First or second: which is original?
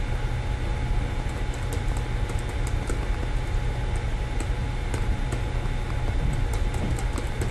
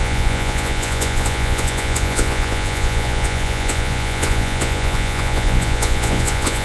first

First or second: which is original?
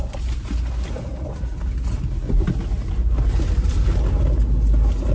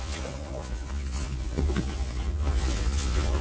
first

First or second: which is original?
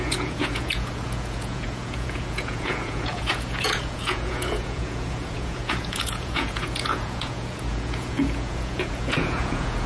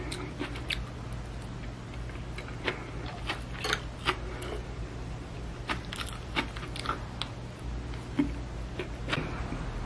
second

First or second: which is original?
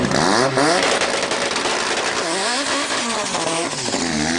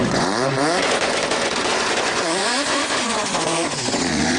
first